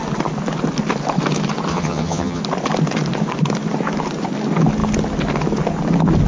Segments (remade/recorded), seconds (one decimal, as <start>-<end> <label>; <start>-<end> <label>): 0.0-1.7 recorded; 1.7-2.4 remade; 2.4-6.3 recorded